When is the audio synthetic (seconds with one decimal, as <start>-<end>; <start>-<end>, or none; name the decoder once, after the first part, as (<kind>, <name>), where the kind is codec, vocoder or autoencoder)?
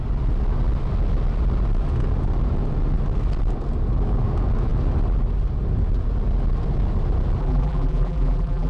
7.4-8.7 (vocoder, BigVGAN v2)